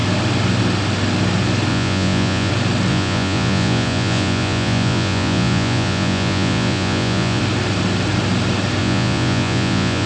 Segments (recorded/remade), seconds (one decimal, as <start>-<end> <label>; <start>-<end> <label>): 0.0-1.7 recorded; 1.7-2.5 remade; 2.5-2.9 recorded; 2.9-7.4 remade; 7.4-8.8 recorded; 8.8-10.1 remade